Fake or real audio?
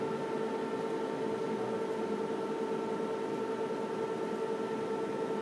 real